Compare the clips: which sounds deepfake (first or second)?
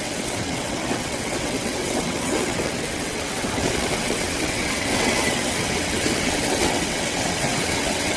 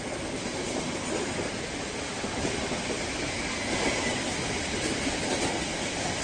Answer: first